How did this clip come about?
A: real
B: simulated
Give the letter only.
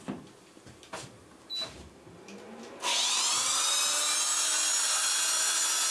A